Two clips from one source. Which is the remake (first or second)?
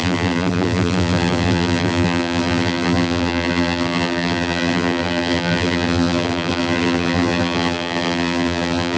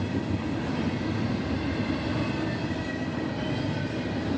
first